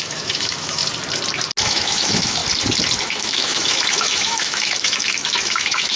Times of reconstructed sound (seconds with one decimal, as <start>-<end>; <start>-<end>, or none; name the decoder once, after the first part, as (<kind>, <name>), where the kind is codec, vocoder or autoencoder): 0.0-0.8 (autoencoder, DAC-VAE); 1.6-2.4; 3.0-6.0